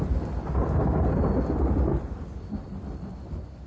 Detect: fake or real real